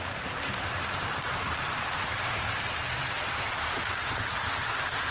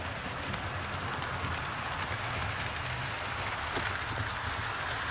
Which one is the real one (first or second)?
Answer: second